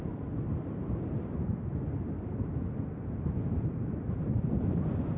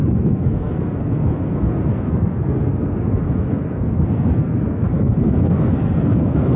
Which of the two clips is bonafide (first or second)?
first